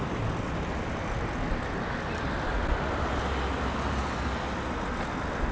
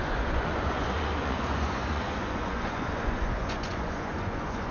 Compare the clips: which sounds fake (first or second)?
second